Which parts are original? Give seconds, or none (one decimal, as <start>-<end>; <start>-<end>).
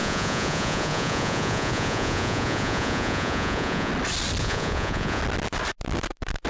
3.9-4.4; 5.2-6.5